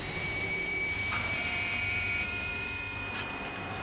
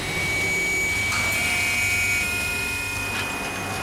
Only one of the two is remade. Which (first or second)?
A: first